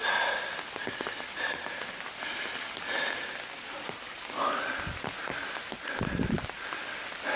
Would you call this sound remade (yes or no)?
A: no